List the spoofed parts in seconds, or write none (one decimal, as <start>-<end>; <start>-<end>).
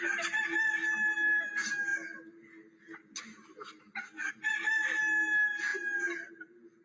none